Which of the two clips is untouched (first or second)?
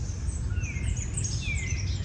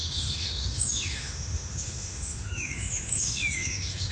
first